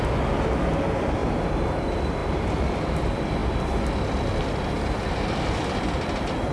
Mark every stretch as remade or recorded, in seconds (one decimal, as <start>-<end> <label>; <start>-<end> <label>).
0.0-3.4 remade; 3.4-4.7 recorded; 4.7-6.5 remade